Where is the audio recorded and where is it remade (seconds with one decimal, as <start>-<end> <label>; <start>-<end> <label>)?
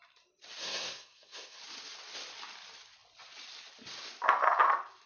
0.0-0.6 recorded; 0.6-1.6 remade; 1.6-5.1 recorded